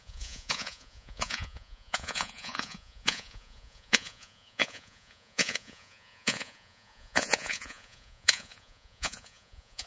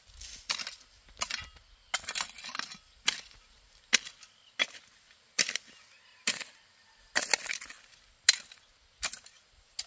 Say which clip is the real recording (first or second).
second